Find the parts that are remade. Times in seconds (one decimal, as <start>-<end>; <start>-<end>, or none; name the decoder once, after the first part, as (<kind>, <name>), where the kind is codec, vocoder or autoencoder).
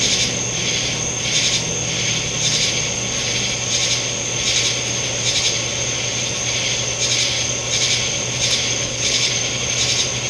8.8-9.3 (codec, HILCodec)